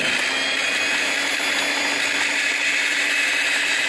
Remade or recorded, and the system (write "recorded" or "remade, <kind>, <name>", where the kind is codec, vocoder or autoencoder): recorded